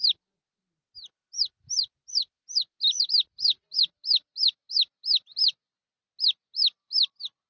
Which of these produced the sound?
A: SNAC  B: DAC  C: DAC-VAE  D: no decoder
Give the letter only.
D